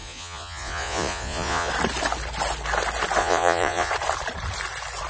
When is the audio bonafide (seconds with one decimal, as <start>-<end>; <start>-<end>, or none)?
1.7-3.2; 3.9-5.1